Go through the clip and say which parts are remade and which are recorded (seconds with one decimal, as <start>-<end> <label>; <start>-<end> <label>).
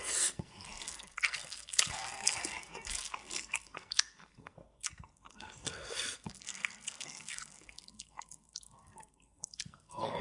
0.0-10.2 remade